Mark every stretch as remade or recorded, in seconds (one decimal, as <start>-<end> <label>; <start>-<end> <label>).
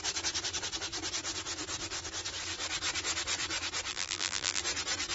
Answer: 0.0-3.9 recorded; 3.9-4.6 remade; 4.6-5.1 recorded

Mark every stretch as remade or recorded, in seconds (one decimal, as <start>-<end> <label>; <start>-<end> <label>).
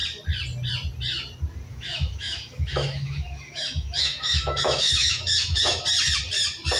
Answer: 0.0-1.7 recorded; 1.7-5.8 remade; 5.8-6.8 recorded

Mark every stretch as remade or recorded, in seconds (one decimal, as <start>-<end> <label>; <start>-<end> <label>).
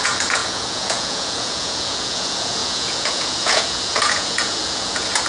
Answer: 0.0-5.3 remade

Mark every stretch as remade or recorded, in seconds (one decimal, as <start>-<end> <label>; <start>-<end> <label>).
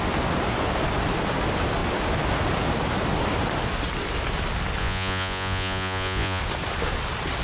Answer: 0.0-4.8 recorded; 4.8-6.4 remade; 6.4-7.4 recorded